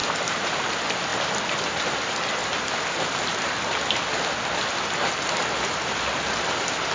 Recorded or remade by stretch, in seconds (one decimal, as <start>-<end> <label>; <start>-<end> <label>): 0.0-6.9 recorded